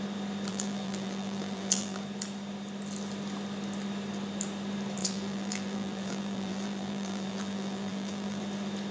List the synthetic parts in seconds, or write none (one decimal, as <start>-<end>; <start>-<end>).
0.5-2.0; 5.0-8.4